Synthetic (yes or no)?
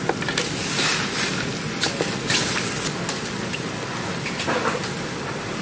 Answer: no